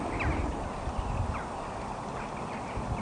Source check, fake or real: real